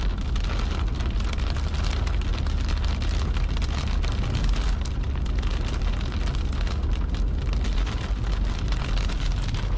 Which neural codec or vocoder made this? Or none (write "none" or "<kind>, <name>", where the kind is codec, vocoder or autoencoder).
none